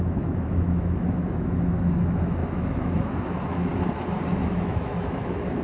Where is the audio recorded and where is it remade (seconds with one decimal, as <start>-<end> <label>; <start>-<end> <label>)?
0.0-3.7 remade; 3.7-4.3 recorded; 4.3-5.6 remade